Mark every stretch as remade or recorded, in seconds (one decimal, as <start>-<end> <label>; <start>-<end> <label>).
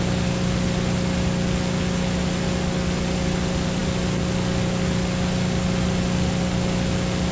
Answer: 0.0-7.3 recorded